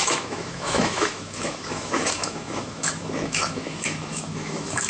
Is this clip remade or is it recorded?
remade